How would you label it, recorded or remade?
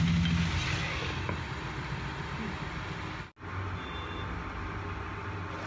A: recorded